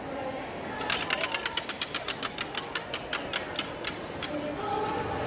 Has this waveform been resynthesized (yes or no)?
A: no